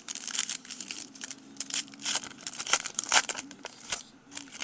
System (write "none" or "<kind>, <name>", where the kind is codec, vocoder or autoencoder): vocoder, BigVGAN v2